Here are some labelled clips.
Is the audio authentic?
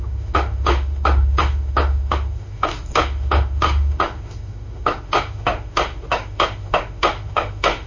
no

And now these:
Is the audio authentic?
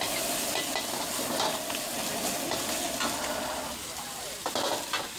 yes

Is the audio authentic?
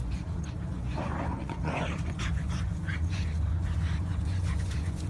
no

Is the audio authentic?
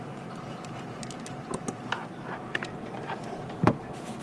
yes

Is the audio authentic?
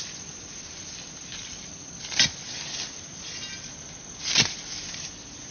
yes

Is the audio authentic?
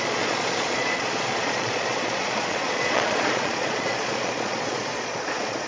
no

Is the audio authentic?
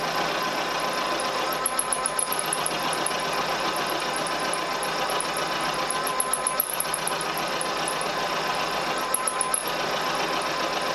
yes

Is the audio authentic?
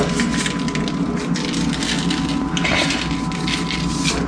yes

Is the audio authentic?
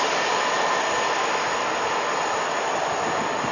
yes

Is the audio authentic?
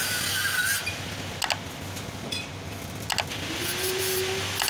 yes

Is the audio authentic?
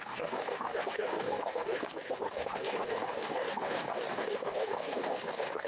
no